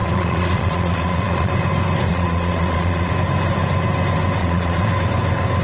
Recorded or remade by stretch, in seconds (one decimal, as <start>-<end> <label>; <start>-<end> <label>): 0.0-1.5 remade; 1.5-2.1 recorded; 2.1-3.1 remade; 3.1-4.4 recorded; 4.4-4.9 remade; 4.9-5.6 recorded